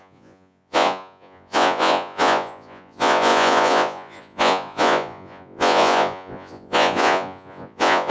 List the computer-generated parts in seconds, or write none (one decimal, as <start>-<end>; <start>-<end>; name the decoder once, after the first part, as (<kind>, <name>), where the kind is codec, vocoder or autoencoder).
0.0-8.1 (vocoder, Vocos)